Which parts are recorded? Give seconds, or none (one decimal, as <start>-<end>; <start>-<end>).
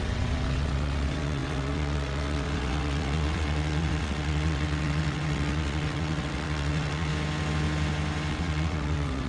7.1-8.3